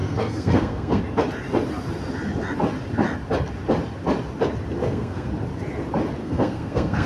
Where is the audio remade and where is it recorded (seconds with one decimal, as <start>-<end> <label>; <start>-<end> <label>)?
0.0-1.0 remade; 1.0-4.8 recorded; 4.8-5.3 remade; 5.3-6.2 recorded; 6.2-7.1 remade